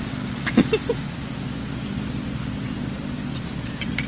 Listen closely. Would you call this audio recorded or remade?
recorded